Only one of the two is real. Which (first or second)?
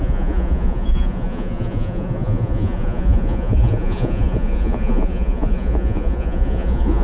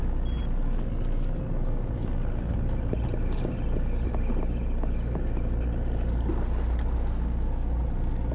second